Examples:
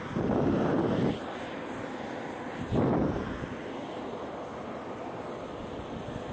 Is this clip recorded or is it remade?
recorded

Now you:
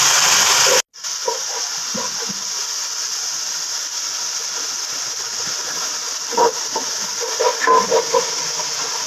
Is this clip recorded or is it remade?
recorded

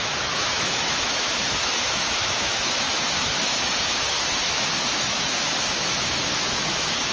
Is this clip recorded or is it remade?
remade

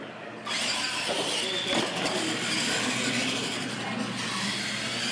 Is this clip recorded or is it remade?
recorded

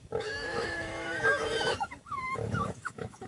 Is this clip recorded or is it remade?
remade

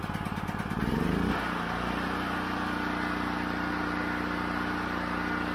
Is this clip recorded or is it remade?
recorded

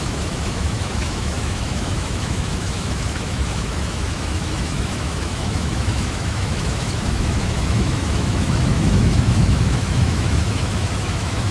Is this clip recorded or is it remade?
remade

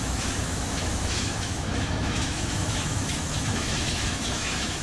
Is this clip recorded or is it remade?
remade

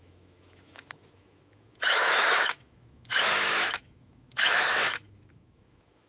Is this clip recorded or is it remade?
remade